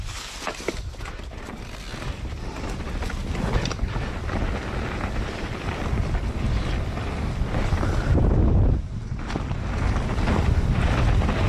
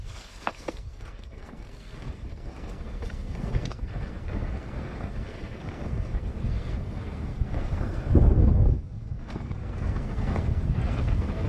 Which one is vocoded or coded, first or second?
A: second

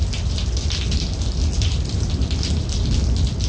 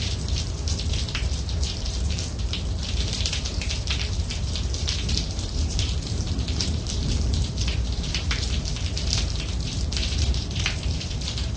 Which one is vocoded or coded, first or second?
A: second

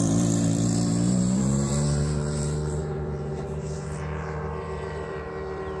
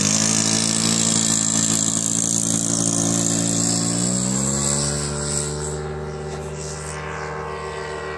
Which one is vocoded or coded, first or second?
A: first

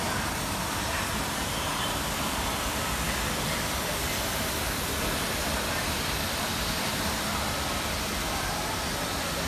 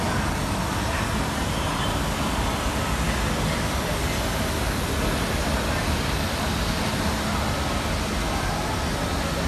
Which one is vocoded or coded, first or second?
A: first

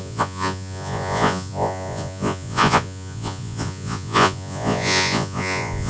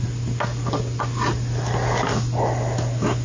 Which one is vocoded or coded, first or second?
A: first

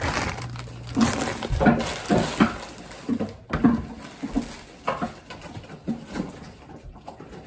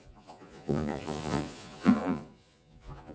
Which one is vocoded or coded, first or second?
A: second